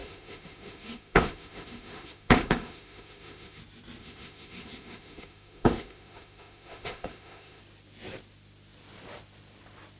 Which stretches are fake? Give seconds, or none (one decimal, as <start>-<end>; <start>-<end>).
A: 0.0-3.6; 4.0-7.6